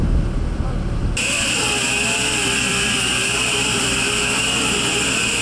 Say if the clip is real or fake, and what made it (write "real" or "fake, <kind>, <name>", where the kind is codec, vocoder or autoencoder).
fake, vocoder, BigVGAN v2